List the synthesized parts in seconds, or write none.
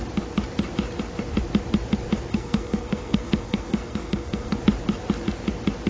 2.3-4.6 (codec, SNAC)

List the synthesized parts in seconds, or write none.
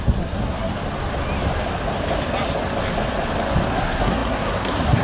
0.0-0.7 (codec, SNAC); 3.7-5.0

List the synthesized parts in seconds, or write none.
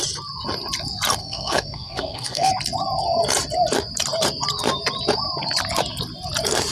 1.2-2.5 (codec, SNAC)